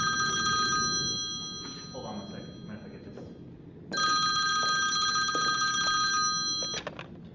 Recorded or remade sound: recorded